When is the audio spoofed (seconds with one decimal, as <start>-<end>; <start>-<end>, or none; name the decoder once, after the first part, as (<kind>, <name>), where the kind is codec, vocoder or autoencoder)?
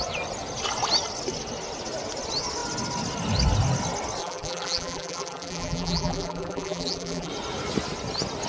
4.2-7.3 (vocoder, BigVGAN v2)